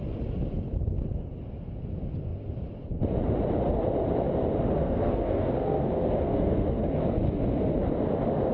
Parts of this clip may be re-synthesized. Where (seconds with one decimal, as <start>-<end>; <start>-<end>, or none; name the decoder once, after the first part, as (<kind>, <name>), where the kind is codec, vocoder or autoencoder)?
4.8-7.0 (codec, SNAC)